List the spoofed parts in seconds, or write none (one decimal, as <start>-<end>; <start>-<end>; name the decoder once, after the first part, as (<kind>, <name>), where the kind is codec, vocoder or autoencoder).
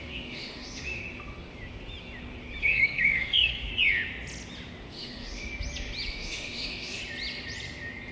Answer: 0.0-1.0 (autoencoder, DAC-VAE); 2.6-3.7; 4.9-5.5; 6.1-7.0